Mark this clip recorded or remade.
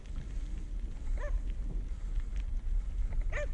recorded